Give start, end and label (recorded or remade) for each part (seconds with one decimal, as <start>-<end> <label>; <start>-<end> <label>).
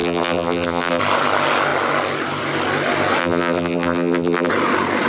0.0-1.0 remade; 1.0-3.2 recorded; 3.2-4.5 remade; 4.5-5.1 recorded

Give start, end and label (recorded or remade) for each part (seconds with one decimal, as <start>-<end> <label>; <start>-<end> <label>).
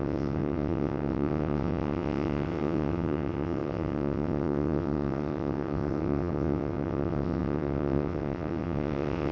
0.0-9.3 remade